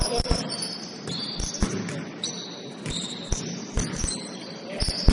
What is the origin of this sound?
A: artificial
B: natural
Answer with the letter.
B